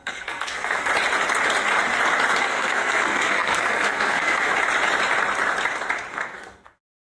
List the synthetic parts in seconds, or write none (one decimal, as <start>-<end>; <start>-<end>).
0.0-0.9; 2.4-4.5; 6.1-7.0